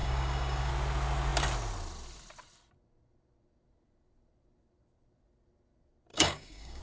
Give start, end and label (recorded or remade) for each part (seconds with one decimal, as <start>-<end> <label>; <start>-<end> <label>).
0.0-0.7 remade; 0.7-6.1 recorded; 6.1-6.8 remade